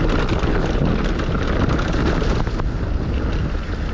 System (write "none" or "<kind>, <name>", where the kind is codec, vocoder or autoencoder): none